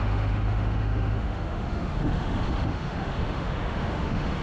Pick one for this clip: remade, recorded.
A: remade